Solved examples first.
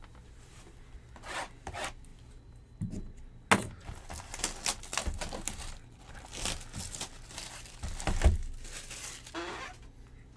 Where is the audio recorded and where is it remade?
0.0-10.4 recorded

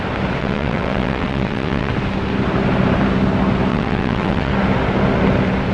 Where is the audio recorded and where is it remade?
0.0-0.4 recorded; 0.4-1.9 remade; 1.9-3.7 recorded; 3.7-4.5 remade; 4.5-5.7 recorded

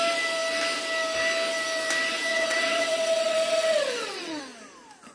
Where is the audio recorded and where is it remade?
0.0-2.3 recorded; 2.3-4.4 remade; 4.4-5.1 recorded

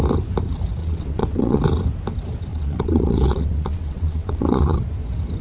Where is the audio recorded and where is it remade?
0.0-0.8 recorded; 0.8-1.6 remade; 1.6-2.5 recorded; 2.5-4.8 remade; 4.8-5.4 recorded

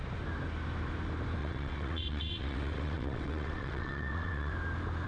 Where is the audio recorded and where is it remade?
0.0-1.4 recorded; 1.4-4.5 remade; 4.5-5.1 recorded

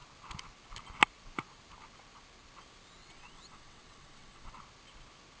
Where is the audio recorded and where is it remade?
0.0-3.0 recorded; 3.0-4.6 remade; 4.6-5.4 recorded